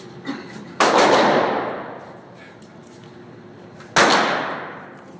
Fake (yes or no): no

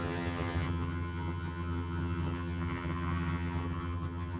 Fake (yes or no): yes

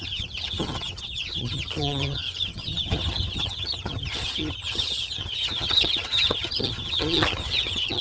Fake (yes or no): yes